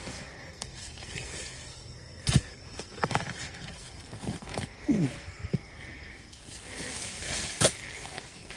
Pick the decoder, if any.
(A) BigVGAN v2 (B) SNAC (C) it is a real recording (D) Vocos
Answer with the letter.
B